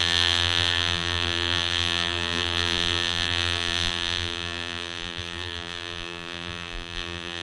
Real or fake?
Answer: fake